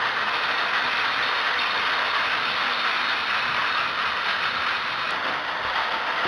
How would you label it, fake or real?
real